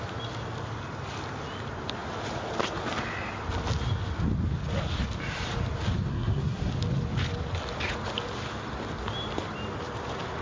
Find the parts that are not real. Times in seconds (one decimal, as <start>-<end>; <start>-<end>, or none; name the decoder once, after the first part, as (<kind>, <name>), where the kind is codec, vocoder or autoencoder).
6.1-6.7 (codec, SNAC)